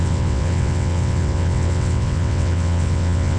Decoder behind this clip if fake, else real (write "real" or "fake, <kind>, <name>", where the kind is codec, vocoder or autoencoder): fake, vocoder, WaveNeXt